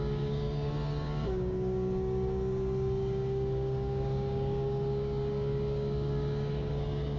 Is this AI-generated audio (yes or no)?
yes